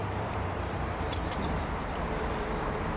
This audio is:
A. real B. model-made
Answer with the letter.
B